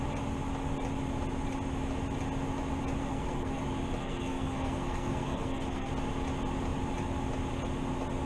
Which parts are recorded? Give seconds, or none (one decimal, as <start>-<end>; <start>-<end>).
0.0-3.0; 3.6-4.0; 5.9-8.3